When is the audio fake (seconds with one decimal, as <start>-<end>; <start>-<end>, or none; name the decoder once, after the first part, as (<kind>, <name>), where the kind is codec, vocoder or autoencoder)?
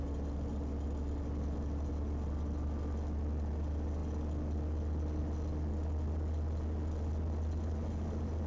none